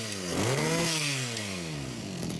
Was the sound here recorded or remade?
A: remade